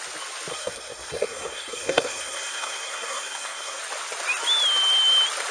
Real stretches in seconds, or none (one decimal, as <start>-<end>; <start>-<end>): 0.0-0.5; 3.8-5.5